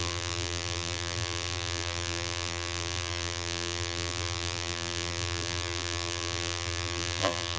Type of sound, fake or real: fake